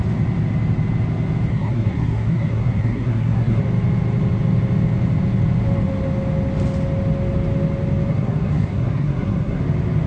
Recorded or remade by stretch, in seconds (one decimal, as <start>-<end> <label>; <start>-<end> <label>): 0.0-1.5 recorded; 1.5-3.6 remade; 3.6-8.1 recorded; 8.1-9.6 remade; 9.6-10.1 recorded